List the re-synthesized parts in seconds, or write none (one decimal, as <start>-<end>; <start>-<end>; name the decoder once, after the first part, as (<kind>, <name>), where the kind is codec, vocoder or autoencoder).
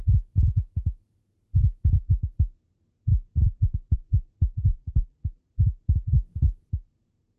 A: 3.4-4.3 (vocoder, BigVGAN v2); 4.7-5.5